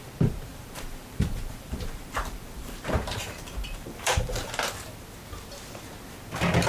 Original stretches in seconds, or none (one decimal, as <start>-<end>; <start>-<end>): 0.0-0.5; 4.5-6.7